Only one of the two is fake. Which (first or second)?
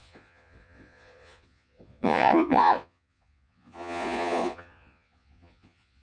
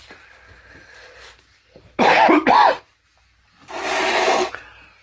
first